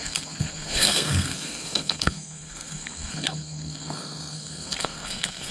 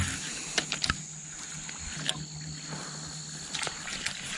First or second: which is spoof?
first